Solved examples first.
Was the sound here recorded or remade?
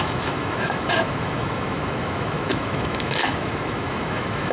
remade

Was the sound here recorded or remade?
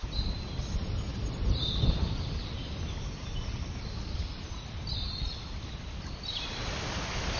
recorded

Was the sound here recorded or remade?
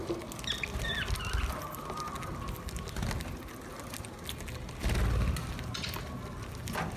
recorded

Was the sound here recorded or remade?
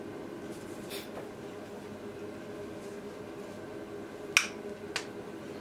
recorded